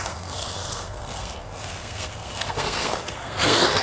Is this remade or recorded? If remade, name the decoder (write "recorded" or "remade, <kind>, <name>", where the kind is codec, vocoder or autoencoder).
remade, codec, SNAC